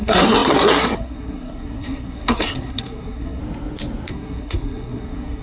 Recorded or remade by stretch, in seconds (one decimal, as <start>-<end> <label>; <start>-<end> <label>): 0.0-3.4 remade; 3.4-4.1 recorded; 4.1-5.4 remade